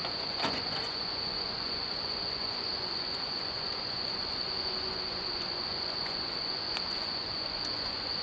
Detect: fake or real fake